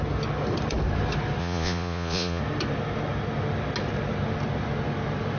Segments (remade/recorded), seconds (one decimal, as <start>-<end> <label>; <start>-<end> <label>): 0.0-1.4 recorded; 1.4-2.4 remade; 2.4-5.4 recorded